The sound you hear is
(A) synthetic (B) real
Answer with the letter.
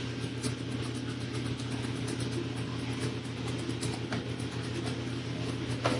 B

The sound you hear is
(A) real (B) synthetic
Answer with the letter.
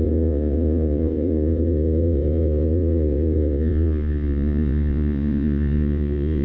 B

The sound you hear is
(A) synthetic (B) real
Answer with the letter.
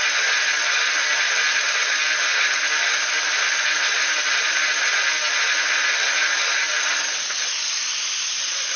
B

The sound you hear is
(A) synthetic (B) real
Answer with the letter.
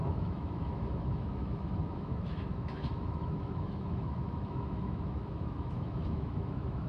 A